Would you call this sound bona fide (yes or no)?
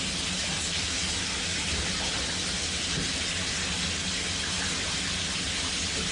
yes